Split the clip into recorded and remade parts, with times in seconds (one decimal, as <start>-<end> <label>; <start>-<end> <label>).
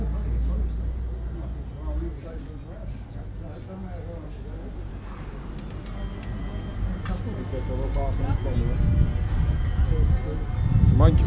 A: 0.0-11.3 recorded